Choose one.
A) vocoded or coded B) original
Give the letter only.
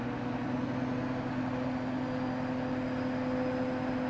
B